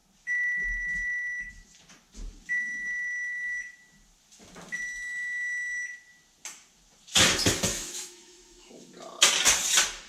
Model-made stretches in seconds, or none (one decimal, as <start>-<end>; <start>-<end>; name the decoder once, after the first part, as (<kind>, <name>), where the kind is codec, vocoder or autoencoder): 7.7-8.9 (autoencoder, DAC-VAE)

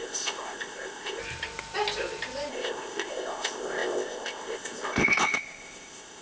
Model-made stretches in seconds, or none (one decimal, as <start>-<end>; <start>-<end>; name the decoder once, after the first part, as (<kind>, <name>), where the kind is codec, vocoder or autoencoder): 0.0-1.2 (codec, ZipCodec); 2.5-6.2

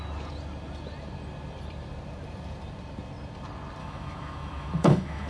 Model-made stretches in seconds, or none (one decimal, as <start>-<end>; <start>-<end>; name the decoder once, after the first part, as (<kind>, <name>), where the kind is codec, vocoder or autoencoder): 3.8-5.3 (autoencoder, DAC-VAE)

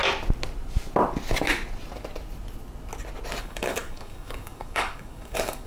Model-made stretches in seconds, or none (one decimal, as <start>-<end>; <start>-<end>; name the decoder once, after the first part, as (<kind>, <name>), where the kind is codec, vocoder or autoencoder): 3.4-5.7 (codec, DAC)

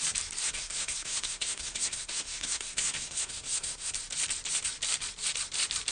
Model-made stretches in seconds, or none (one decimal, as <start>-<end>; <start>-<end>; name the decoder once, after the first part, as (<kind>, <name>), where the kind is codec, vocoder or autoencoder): 0.4-3.9 (codec, SNAC)

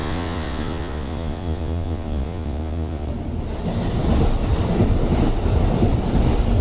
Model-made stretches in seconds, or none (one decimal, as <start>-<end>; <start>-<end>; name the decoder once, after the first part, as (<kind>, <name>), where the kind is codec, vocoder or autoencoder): 0.0-3.1 (vocoder, Vocos)

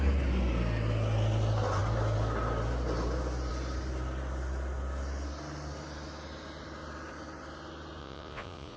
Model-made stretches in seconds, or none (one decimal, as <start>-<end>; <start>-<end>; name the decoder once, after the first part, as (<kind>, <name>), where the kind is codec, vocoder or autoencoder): 8.0-8.8 (vocoder, Vocos)